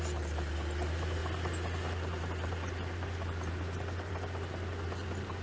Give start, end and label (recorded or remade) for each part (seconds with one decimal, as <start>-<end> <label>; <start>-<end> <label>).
0.0-5.4 recorded